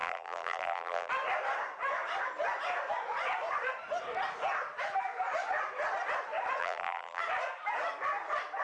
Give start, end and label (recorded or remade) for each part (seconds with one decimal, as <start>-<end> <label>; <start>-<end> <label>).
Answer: 0.0-1.1 remade; 1.1-6.6 recorded; 6.6-7.2 remade; 7.2-8.6 recorded